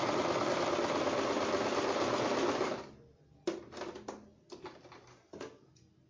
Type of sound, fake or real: real